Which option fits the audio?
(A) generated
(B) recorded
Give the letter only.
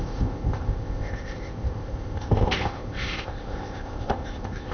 A